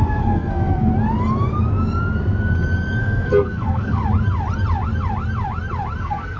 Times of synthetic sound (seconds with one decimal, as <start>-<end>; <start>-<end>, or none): 0.0-0.9; 3.0-4.0; 6.0-6.4